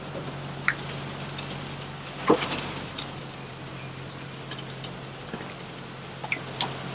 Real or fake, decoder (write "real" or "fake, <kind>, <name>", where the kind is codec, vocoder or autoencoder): real